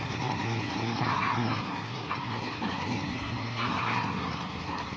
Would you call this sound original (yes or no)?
no